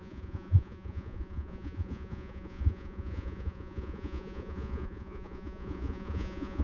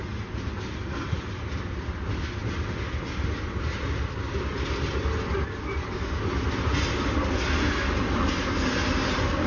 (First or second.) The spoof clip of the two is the first